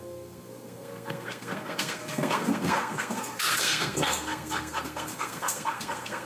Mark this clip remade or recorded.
remade